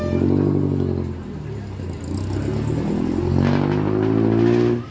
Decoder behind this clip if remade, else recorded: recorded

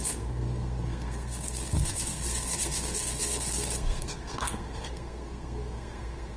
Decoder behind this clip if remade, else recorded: remade, codec, SNAC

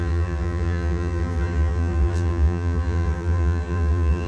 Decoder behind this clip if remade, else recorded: remade, vocoder, BigVGAN v2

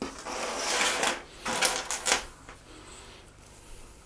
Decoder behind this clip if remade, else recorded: recorded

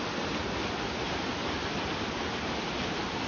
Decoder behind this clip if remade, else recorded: recorded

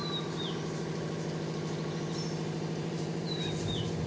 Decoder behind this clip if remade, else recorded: remade, vocoder, BigVGAN v2